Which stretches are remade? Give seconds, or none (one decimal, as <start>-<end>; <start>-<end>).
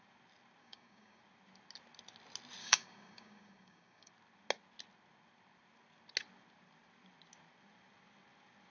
0.6-1.2; 2.6-4.1